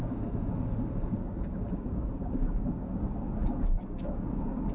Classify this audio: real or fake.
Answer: fake